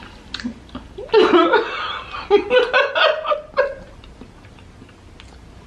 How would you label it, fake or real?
real